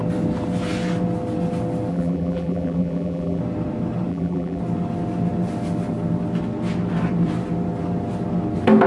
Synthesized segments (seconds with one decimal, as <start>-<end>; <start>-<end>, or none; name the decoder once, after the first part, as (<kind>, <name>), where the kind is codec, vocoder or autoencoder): 1.9-3.4 (vocoder, BigVGAN v2); 4.1-4.6

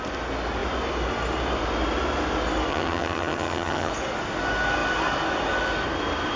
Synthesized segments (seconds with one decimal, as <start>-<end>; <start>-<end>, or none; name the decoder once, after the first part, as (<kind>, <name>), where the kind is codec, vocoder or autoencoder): 2.7-3.9 (vocoder, HiFi-GAN)

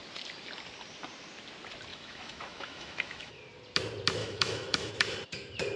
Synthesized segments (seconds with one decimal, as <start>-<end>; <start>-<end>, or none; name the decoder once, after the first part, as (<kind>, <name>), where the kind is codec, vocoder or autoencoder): 1.9-3.4 (autoencoder, DAC-VAE); 4.2-4.9

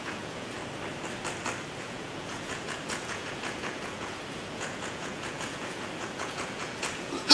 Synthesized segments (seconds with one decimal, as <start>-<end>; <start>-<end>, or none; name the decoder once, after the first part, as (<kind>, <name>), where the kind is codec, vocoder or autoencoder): 0.0-0.6 (vocoder, Vocos); 1.8-7.3

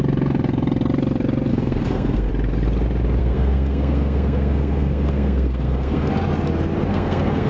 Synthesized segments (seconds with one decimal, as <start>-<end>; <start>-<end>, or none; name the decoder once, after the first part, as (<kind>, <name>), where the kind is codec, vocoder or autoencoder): 1.5-2.3 (codec, SNAC); 3.2-6.1; 6.9-7.5

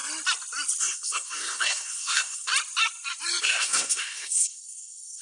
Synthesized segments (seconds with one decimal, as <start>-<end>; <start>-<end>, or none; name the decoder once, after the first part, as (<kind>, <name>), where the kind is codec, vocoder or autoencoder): 0.8-2.5 (codec, SNAC); 3.4-5.2